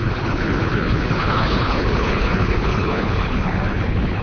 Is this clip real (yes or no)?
no